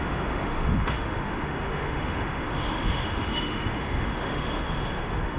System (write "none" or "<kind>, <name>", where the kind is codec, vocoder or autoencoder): autoencoder, DAC-VAE